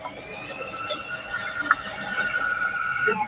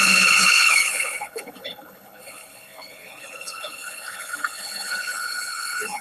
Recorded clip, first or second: first